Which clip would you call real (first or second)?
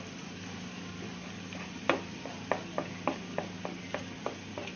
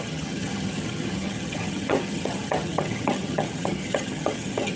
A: first